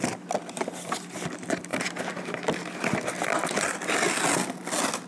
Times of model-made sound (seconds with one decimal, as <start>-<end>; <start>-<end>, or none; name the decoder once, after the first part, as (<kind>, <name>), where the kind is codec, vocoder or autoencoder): none